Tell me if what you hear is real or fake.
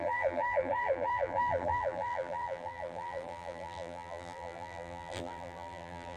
fake